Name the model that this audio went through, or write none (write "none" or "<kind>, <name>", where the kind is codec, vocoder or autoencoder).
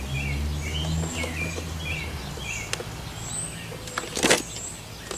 none